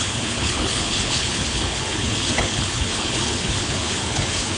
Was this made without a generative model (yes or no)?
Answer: no